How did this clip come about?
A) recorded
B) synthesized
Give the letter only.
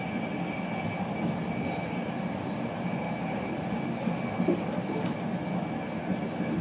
A